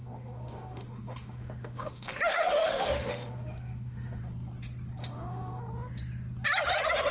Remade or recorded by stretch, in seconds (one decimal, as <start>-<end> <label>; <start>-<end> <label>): 0.0-4.2 remade; 4.2-5.0 recorded; 5.0-5.6 remade; 5.6-7.1 recorded